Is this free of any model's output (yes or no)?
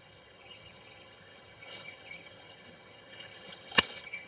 no